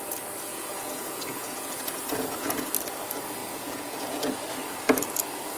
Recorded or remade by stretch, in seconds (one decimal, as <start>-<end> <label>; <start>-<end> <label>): 0.0-0.5 recorded; 0.5-2.7 remade; 2.7-3.4 recorded; 3.4-4.4 remade; 4.4-5.6 recorded